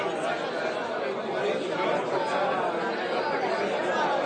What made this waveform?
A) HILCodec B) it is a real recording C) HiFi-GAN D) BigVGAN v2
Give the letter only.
B